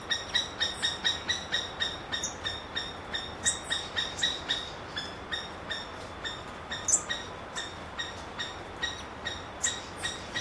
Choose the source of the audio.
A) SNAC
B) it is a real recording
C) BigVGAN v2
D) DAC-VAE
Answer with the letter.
B